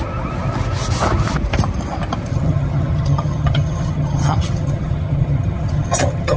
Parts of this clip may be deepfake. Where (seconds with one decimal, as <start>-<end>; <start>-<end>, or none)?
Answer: 2.3-6.4